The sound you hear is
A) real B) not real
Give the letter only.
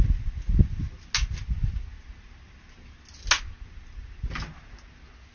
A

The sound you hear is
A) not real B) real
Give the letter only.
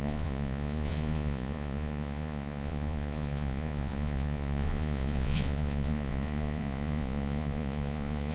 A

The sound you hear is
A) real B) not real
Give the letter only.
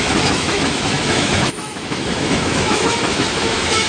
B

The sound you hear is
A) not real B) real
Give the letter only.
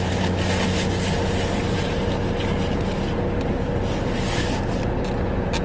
B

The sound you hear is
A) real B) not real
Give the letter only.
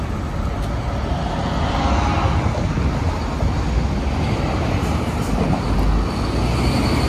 A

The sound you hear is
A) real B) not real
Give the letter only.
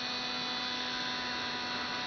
A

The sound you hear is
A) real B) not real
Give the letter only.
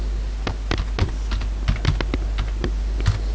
A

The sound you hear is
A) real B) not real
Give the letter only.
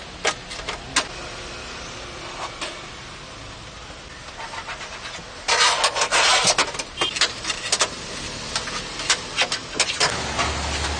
A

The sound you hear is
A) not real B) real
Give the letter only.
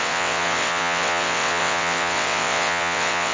A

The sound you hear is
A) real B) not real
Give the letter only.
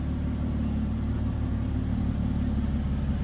A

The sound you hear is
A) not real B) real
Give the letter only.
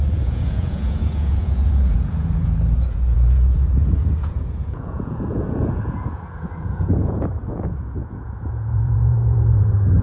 A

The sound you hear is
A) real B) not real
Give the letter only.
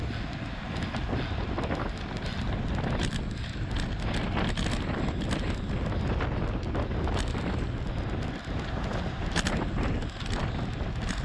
A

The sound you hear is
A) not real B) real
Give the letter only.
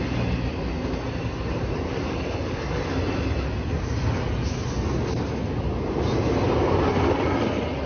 B